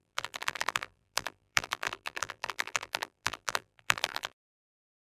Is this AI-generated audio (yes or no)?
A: yes